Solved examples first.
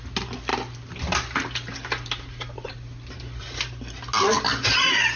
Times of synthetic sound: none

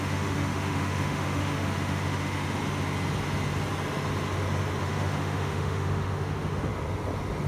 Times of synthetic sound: 0.0-2.6 (autoencoder, DAC-VAE); 4.8-6.7

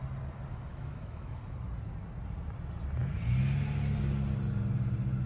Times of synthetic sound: 0.7-1.4 (autoencoder, DAC-VAE)

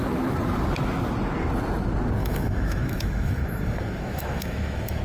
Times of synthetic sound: 2.2-5.0 (autoencoder, DAC-VAE)

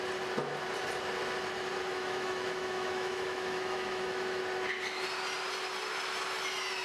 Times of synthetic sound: 1.9-4.4 (autoencoder, DAC-VAE)

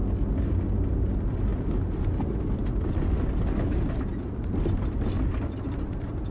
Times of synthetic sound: none